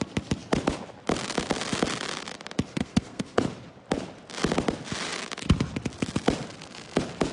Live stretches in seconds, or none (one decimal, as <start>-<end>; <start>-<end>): 0.0-2.7; 3.4-7.3